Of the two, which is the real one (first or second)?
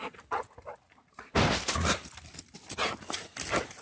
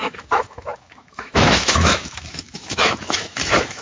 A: first